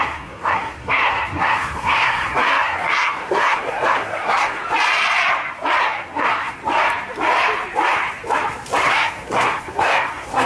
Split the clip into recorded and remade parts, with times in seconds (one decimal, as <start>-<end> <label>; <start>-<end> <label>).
0.0-4.6 remade; 4.6-5.8 recorded; 5.8-6.6 remade; 6.6-8.9 recorded; 8.9-10.5 remade

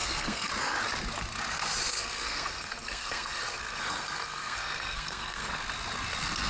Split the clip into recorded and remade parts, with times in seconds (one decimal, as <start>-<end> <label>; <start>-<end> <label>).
0.0-0.5 remade; 0.5-1.9 recorded; 1.9-5.5 remade; 5.5-6.5 recorded

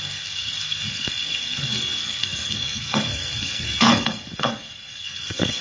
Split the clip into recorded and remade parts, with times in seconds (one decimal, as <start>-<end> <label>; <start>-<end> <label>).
0.0-5.6 remade

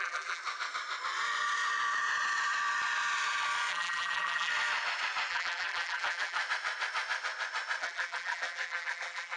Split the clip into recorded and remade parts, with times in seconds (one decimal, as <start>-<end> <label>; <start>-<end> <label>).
0.0-0.4 remade; 0.4-3.7 recorded; 3.7-4.5 remade; 4.5-5.3 recorded; 5.3-6.4 remade; 6.4-7.8 recorded; 7.8-9.4 remade

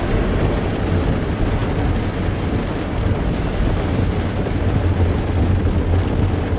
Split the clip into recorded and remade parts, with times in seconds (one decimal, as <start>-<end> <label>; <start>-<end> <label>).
0.0-6.6 recorded